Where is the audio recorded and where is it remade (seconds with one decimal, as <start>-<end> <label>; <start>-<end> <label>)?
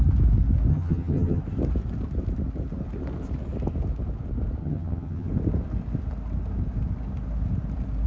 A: 0.0-0.7 recorded; 0.7-1.4 remade; 1.4-4.6 recorded; 4.6-5.3 remade; 5.3-8.1 recorded